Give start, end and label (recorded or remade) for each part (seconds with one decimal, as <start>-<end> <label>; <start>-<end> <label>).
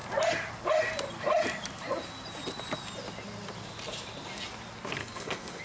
0.0-5.0 recorded; 5.0-5.6 remade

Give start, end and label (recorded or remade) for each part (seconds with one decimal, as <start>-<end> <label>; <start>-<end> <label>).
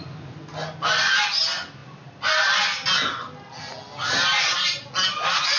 0.0-5.6 recorded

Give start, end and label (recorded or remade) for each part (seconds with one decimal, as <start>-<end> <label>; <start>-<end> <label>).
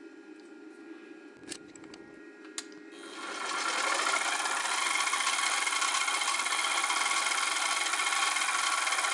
0.0-9.1 recorded